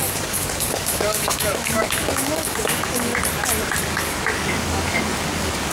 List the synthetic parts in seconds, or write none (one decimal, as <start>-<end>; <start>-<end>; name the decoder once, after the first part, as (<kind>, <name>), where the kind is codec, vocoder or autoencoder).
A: 0.0-3.1 (codec, DAC); 3.8-5.7

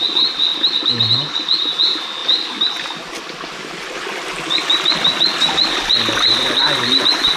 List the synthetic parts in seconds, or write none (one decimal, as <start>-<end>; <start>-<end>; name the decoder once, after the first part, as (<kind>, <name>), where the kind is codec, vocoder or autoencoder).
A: none

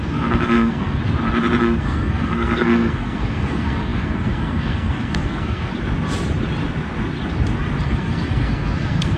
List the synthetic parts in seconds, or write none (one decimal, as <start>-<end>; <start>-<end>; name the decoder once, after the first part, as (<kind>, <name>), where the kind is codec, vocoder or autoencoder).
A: 0.0-1.0 (codec, SNAC); 1.6-5.7; 7.8-9.2